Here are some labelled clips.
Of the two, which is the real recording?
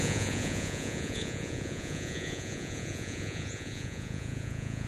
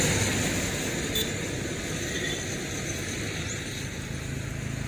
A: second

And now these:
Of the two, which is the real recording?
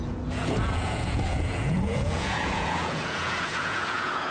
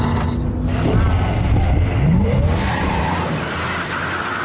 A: second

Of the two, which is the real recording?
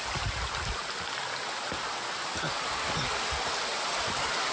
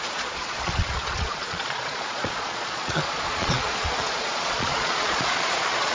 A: first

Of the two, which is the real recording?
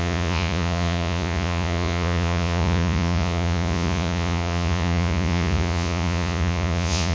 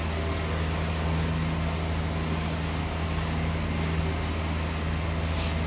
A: second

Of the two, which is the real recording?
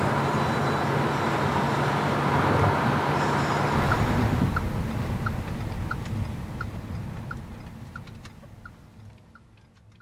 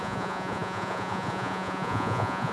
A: first